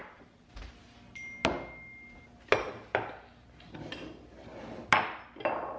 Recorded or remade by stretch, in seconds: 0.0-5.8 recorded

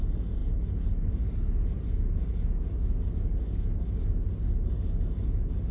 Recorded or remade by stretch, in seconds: 0.0-5.7 recorded

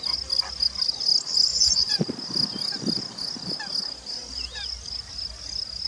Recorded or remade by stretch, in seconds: 0.0-1.5 recorded; 1.5-2.0 remade; 2.0-5.9 recorded